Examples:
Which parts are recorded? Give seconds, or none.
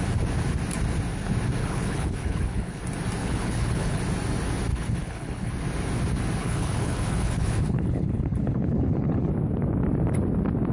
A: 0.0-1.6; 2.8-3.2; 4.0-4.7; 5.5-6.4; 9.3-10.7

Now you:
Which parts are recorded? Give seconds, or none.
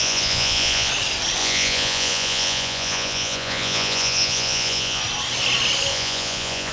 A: 0.9-1.4; 5.0-5.9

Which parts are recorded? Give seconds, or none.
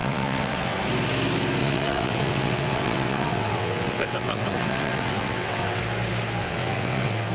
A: 0.8-1.6; 5.8-6.4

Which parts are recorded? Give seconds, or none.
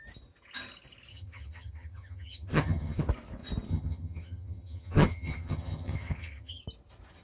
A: 0.0-1.1; 3.1-3.7; 6.6-7.2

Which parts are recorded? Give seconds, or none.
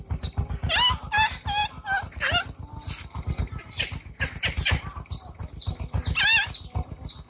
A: 0.0-7.3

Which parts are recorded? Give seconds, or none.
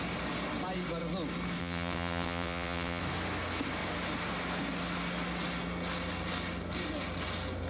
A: 0.0-1.6; 3.0-7.7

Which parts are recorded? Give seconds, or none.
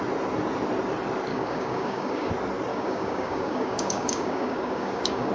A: 0.0-1.3; 2.3-2.7